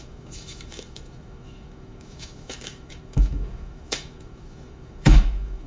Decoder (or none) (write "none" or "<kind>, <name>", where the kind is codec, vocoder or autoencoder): autoencoder, DAC-VAE